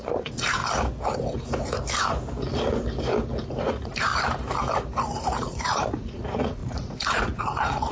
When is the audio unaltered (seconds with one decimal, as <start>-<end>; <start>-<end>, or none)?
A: 0.6-3.6; 4.1-5.4